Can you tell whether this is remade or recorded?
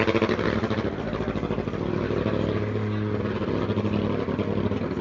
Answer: recorded